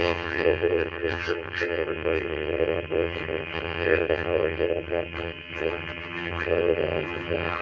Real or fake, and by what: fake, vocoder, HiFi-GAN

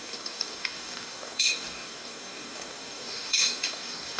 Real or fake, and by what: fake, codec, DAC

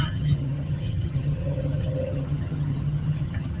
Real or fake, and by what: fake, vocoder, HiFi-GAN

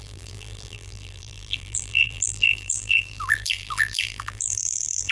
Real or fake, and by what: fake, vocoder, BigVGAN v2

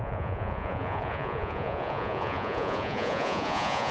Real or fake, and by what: fake, vocoder, Vocos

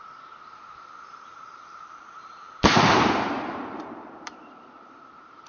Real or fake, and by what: fake, vocoder, BigVGAN v2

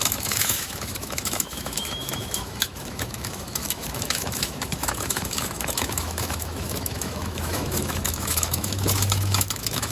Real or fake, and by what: fake, autoencoder, DAC-VAE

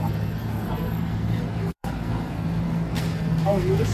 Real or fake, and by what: fake, codec, SNAC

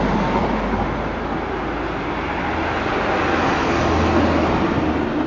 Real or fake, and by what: real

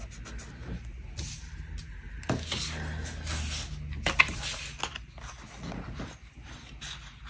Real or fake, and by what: real